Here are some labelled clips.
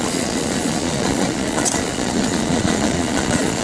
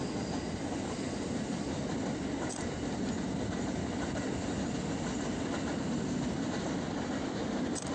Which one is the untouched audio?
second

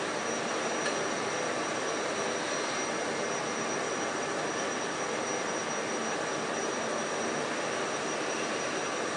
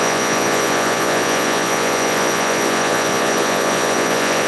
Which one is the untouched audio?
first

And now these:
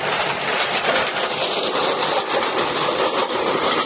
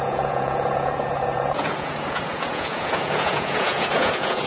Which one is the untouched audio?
first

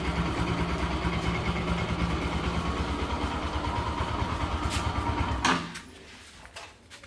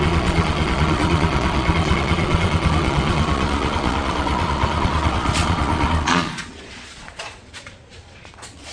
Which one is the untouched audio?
first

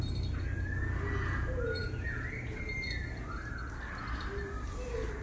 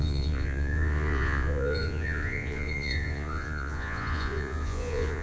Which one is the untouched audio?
first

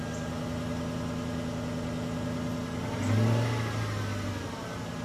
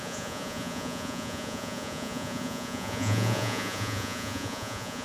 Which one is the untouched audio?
first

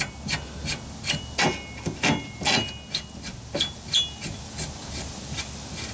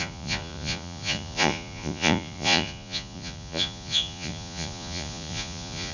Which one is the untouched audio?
first